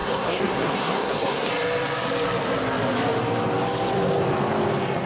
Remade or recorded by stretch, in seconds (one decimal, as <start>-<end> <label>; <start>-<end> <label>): 0.0-1.5 remade; 1.5-5.1 recorded